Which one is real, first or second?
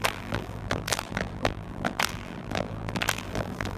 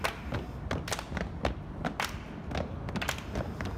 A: second